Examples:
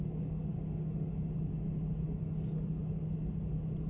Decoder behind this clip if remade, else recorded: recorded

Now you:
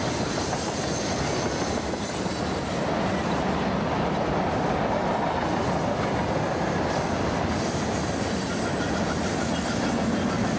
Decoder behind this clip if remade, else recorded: recorded